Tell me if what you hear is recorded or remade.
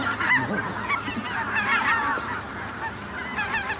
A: recorded